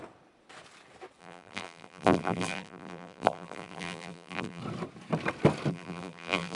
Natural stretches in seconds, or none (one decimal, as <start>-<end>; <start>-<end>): 0.0-1.2; 4.6-5.7